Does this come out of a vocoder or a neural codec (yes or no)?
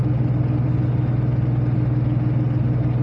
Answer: no